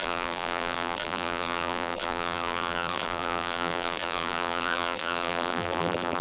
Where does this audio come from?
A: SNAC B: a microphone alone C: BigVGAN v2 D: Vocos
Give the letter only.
C